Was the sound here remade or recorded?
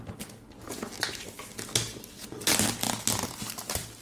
recorded